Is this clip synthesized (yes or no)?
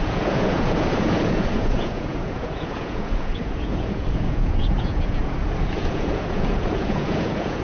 yes